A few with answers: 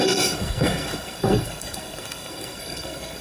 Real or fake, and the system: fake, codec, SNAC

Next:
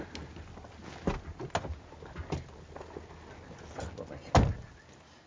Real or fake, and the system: real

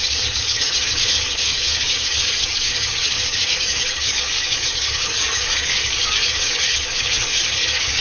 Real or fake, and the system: fake, codec, DAC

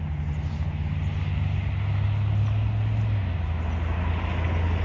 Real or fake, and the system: real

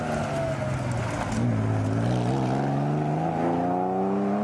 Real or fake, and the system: real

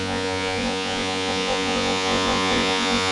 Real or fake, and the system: fake, vocoder, Vocos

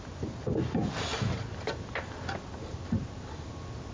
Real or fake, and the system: real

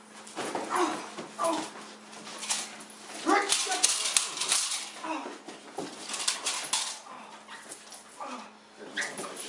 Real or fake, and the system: real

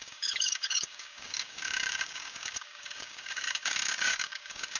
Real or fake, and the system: fake, codec, DAC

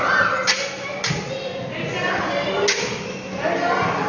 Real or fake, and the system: real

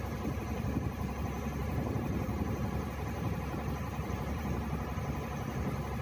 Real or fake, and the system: real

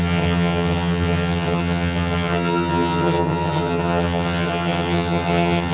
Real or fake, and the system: fake, vocoder, HiFi-GAN